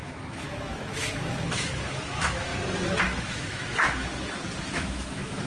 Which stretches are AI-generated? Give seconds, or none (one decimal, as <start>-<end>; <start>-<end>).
0.0-2.5; 3.0-4.1; 4.6-5.5